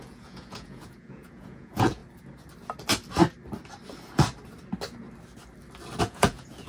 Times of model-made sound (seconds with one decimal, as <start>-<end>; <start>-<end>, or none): 0.0-2.0; 6.0-6.7